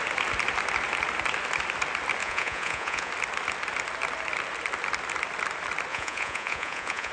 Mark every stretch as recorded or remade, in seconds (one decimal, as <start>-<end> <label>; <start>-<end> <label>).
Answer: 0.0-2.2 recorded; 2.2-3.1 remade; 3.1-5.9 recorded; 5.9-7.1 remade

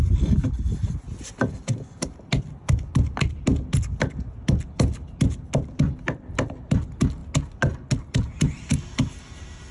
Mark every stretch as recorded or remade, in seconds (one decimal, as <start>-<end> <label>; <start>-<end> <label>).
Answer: 0.0-9.7 recorded

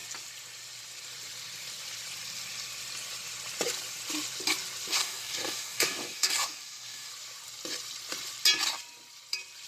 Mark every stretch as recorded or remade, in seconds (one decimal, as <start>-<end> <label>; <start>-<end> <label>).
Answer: 0.0-4.9 recorded; 4.9-7.1 remade; 7.1-9.7 recorded

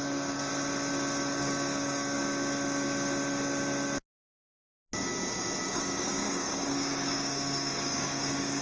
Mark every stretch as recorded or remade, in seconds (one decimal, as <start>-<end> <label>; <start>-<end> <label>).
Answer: 0.0-0.5 remade; 0.5-1.4 recorded; 1.4-2.3 remade; 2.3-5.6 recorded; 5.6-8.6 remade

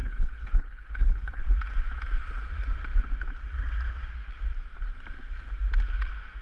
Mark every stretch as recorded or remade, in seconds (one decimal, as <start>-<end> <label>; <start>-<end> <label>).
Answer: 0.0-1.4 remade; 1.4-6.4 recorded